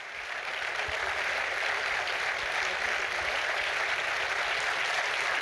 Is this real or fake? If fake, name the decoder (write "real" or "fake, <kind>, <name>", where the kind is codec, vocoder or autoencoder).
real